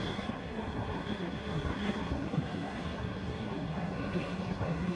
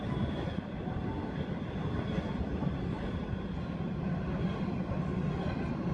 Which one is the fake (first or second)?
first